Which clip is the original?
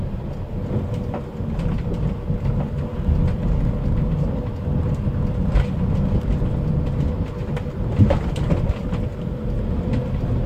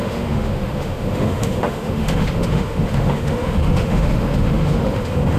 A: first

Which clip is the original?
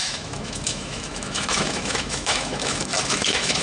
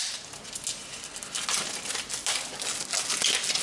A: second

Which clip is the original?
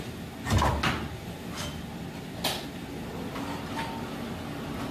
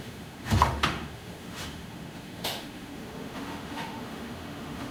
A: first